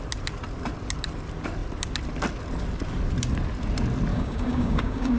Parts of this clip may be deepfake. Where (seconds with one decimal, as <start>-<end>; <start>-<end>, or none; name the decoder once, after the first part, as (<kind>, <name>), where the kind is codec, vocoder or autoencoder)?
4.1-5.2 (codec, DAC)